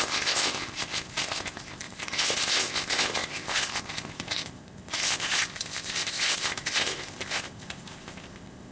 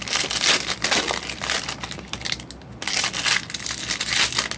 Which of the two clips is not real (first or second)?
first